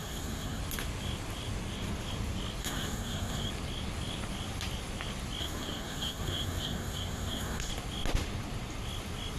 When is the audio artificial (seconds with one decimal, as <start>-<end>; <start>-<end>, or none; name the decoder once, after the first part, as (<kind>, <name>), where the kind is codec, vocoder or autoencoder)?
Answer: 0.0-0.6 (codec, SNAC); 2.6-3.5; 5.4-7.7